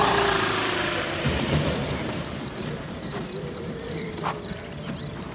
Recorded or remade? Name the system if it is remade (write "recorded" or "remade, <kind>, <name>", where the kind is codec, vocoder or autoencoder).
remade, vocoder, BigVGAN v2